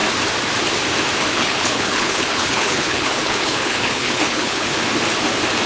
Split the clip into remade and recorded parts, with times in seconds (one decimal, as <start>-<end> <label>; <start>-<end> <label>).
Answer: 0.0-1.3 recorded; 1.3-4.7 remade; 4.7-5.7 recorded